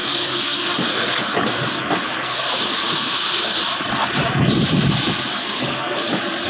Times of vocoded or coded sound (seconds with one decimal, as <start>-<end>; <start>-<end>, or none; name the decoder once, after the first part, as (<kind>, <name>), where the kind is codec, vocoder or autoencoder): 0.0-3.6 (codec, SNAC); 5.3-6.1